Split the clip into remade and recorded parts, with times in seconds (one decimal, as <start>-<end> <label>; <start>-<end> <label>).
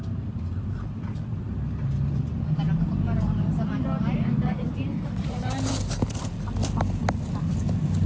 0.0-8.1 recorded